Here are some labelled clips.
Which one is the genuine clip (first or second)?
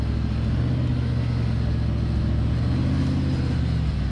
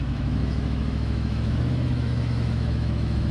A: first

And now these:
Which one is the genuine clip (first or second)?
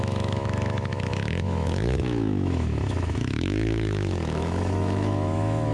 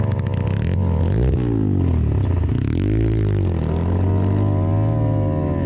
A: second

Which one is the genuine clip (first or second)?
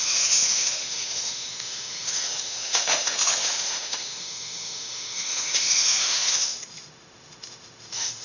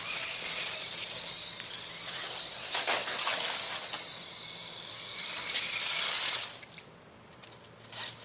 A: second